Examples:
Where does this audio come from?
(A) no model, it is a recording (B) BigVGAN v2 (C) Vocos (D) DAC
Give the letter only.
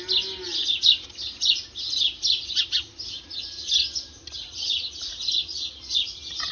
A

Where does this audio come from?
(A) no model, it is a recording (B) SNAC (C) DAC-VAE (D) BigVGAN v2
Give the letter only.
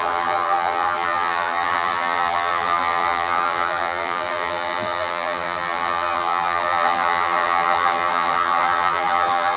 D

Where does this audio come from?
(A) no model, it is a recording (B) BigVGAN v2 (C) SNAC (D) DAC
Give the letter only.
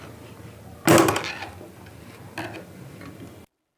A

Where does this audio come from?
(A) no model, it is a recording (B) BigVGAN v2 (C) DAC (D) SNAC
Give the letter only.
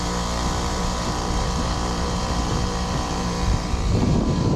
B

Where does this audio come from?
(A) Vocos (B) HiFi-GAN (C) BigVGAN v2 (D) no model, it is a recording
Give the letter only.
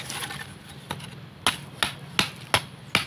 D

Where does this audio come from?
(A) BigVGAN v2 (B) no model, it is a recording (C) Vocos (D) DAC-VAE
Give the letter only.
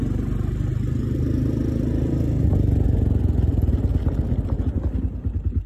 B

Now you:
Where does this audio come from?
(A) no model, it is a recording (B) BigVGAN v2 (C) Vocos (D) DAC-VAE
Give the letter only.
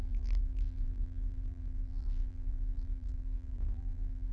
B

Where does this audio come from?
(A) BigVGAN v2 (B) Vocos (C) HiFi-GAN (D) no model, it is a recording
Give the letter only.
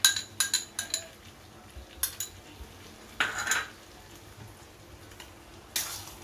D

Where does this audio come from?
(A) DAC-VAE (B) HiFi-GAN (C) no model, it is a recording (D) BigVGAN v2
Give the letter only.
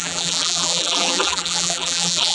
D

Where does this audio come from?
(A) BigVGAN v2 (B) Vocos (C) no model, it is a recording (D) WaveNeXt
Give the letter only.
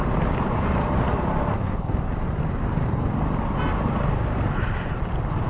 A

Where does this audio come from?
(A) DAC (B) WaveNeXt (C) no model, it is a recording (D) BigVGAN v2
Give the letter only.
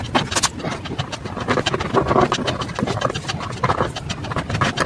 C